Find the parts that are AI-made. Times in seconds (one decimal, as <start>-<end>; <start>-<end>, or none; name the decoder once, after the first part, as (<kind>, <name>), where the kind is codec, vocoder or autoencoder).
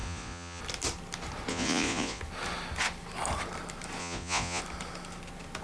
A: 0.0-0.6 (vocoder, Vocos); 1.5-2.2; 4.0-4.6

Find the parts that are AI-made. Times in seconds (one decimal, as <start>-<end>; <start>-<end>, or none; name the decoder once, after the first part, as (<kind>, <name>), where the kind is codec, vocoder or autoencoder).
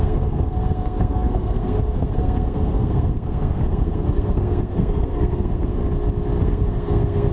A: 0.0-5.8 (codec, SNAC); 6.4-7.3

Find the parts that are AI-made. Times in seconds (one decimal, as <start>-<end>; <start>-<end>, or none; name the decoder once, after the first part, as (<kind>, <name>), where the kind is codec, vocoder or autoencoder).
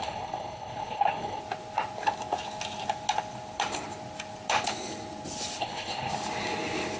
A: 0.0-1.4 (codec, HILCodec); 5.6-6.1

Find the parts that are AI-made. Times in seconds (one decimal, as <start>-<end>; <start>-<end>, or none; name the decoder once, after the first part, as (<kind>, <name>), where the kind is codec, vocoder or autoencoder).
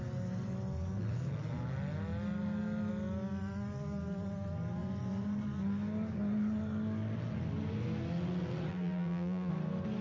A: 8.7-9.5 (vocoder, BigVGAN v2)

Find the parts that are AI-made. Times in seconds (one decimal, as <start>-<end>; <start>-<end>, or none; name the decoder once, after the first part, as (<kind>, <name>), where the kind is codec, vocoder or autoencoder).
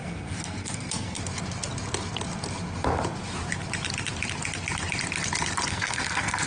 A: 0.0-1.2 (codec, SNAC); 5.7-6.5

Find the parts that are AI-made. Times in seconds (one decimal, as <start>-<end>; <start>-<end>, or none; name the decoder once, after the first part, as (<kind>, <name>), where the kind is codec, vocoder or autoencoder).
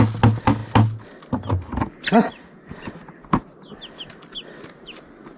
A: none